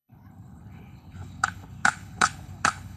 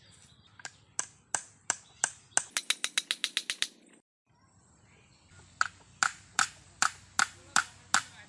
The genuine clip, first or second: second